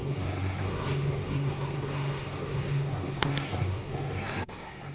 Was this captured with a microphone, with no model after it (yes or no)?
no